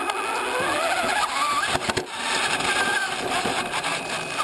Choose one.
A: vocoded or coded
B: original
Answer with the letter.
B